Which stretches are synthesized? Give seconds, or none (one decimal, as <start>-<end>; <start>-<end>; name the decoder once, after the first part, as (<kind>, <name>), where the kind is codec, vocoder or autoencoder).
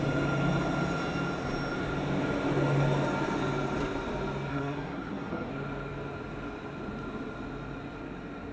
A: 4.5-5.5 (codec, SNAC)